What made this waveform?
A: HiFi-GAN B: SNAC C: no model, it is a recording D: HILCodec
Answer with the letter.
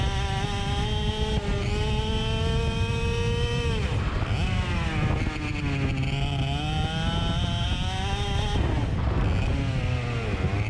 C